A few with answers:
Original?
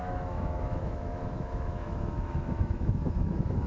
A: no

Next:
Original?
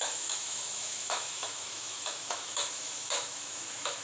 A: no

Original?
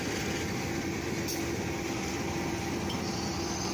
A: yes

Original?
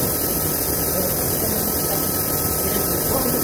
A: yes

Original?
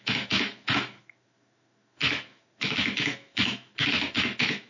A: no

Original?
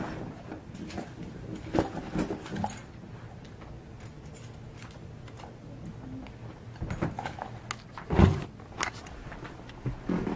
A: yes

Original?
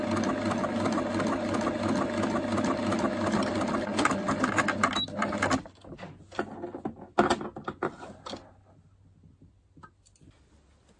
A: yes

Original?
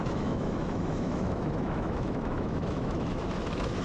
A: no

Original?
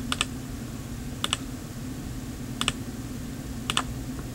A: yes